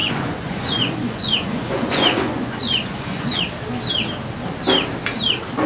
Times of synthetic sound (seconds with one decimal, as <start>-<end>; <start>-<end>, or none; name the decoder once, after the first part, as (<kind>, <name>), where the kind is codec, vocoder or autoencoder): 0.0-3.4 (vocoder, Vocos)

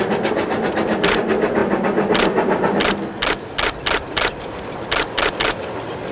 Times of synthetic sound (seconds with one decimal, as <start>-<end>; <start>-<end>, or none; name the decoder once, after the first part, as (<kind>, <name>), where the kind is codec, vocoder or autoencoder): none